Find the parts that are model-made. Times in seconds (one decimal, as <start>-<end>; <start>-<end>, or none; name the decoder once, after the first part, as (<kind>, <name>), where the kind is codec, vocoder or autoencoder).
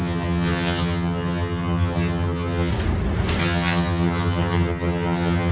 0.0-2.7 (vocoder, HiFi-GAN); 3.4-5.5